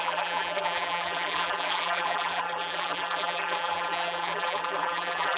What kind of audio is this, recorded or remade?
remade